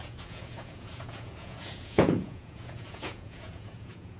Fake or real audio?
fake